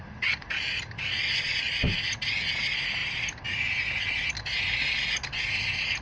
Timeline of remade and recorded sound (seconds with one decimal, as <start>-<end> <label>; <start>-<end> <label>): 0.0-6.0 recorded